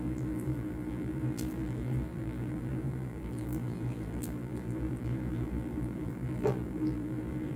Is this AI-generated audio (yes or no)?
yes